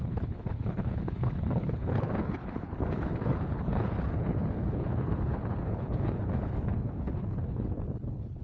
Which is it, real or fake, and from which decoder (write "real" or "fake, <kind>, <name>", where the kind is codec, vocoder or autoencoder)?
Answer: fake, codec, HILCodec